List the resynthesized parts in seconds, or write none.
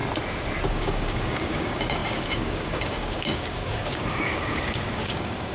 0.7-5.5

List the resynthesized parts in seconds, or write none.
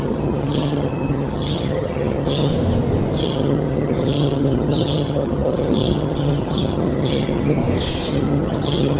0.0-2.5; 3.2-7.6; 8.1-9.0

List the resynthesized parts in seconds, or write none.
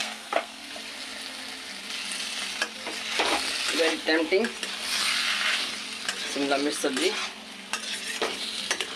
0.0-0.7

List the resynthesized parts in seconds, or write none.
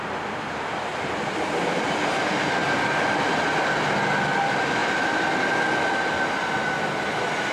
none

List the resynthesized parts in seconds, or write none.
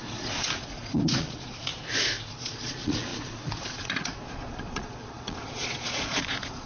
0.0-1.7; 2.3-6.7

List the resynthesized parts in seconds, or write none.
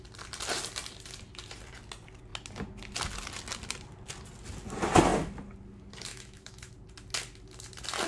6.1-6.7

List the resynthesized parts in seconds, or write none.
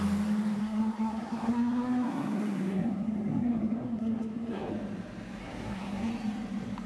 0.6-4.7; 5.4-6.1